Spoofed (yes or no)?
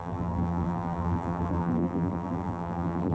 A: yes